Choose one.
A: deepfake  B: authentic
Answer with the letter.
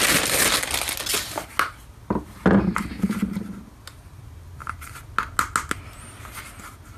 B